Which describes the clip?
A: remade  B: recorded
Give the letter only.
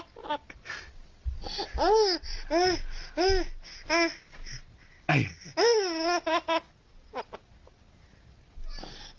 B